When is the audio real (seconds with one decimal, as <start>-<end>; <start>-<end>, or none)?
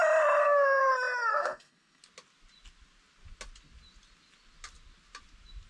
0.0-0.4; 0.9-1.3; 2.0-5.7